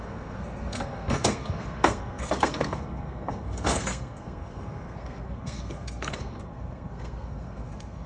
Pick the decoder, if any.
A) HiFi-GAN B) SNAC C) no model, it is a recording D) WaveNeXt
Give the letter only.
B